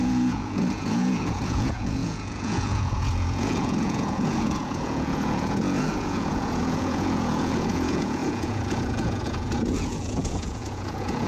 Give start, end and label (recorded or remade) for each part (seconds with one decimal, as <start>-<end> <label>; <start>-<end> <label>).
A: 0.0-11.3 remade